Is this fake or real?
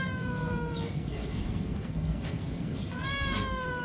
fake